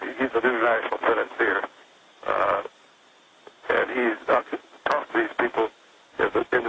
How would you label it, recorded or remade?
recorded